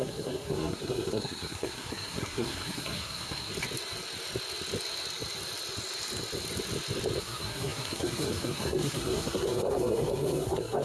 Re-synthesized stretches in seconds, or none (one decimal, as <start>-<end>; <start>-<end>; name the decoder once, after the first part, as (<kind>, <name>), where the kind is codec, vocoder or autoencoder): 0.0-3.5 (codec, SNAC); 7.2-10.8